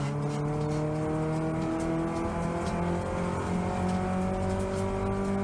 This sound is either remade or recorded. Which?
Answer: recorded